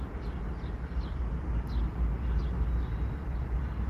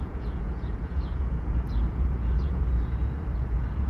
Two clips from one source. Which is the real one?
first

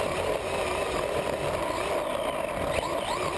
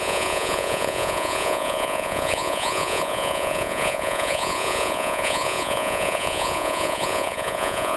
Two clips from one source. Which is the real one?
first